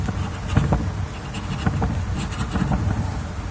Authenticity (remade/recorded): recorded